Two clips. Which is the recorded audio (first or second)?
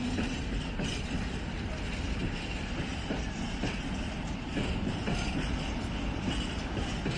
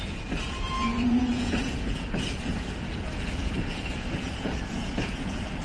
first